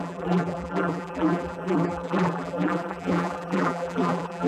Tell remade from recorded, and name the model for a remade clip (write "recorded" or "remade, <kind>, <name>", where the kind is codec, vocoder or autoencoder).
remade, vocoder, BigVGAN v2